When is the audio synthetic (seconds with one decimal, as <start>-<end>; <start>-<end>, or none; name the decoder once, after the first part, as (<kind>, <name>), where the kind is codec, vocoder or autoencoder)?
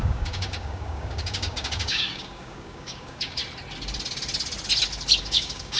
0.0-3.4 (codec, DAC); 5.2-5.8